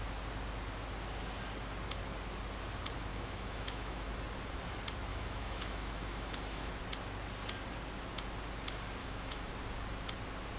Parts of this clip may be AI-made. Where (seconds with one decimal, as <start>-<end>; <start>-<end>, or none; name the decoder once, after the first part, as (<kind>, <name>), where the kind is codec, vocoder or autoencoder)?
3.1-4.1 (autoencoder, DAC-VAE); 5.1-6.7; 9.0-9.5